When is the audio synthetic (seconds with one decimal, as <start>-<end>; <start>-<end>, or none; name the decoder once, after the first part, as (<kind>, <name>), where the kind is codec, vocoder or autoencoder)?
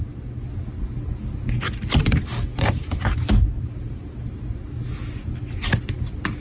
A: 2.3-4.5 (vocoder, BigVGAN v2)